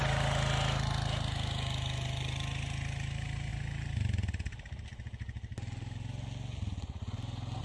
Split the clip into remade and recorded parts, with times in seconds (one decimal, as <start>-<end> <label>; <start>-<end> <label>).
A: 0.0-7.6 recorded